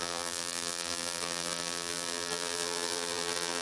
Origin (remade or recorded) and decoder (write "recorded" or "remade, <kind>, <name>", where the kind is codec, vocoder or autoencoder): remade, vocoder, BigVGAN v2